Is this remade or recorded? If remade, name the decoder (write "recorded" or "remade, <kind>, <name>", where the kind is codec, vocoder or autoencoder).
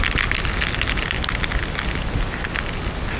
recorded